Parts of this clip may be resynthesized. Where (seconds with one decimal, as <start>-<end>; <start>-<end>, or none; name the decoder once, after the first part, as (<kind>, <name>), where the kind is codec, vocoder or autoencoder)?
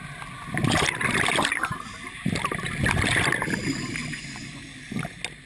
4.0-4.6 (vocoder, Vocos)